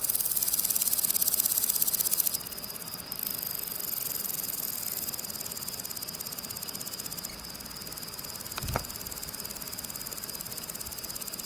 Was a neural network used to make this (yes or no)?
no